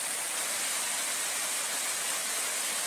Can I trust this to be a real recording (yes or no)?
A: yes